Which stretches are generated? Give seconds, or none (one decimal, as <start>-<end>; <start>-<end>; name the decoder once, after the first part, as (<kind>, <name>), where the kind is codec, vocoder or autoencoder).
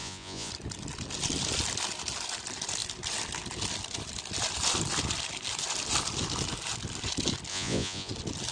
0.0-0.5 (vocoder, Vocos); 7.5-8.1